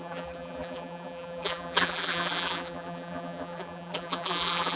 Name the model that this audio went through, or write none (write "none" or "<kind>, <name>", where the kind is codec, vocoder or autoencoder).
vocoder, BigVGAN v2